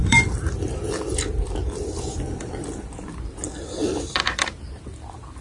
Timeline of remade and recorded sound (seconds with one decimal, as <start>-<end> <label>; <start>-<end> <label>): 0.0-2.0 remade; 2.0-3.8 recorded; 3.8-4.5 remade; 4.5-5.4 recorded

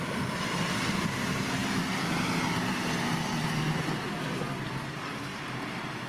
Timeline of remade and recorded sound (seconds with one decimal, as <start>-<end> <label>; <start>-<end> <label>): 0.0-6.1 recorded

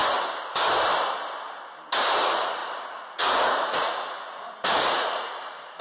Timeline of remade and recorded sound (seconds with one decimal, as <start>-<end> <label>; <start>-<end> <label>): 0.0-2.2 recorded; 2.2-5.8 remade

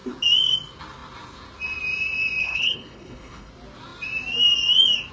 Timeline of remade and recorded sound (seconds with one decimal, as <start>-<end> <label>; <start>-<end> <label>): 0.0-2.4 recorded; 2.4-3.5 remade; 3.5-5.1 recorded

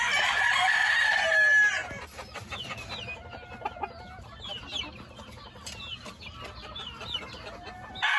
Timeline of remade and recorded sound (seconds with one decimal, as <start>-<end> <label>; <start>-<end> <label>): 0.0-8.2 recorded

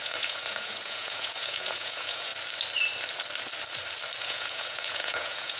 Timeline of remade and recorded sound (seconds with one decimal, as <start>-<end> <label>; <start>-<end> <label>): 0.0-2.3 remade; 2.3-4.2 recorded; 4.2-5.6 remade